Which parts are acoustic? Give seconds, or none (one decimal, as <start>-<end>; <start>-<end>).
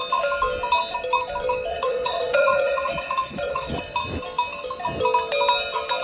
0.0-1.7; 3.8-6.0